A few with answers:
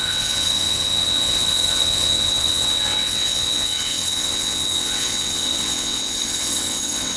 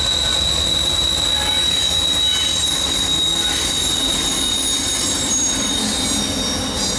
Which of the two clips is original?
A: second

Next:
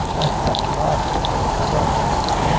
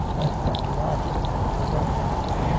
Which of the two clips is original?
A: second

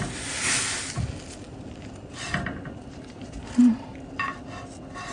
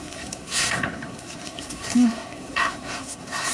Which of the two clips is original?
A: first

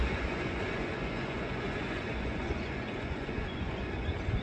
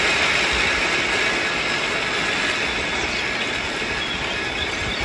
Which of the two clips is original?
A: second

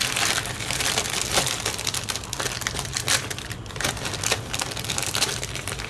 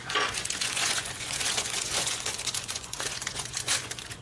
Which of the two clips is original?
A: first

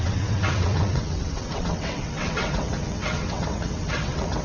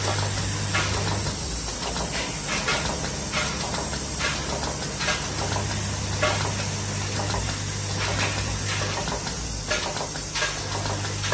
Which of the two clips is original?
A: second